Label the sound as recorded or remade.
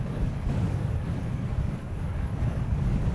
remade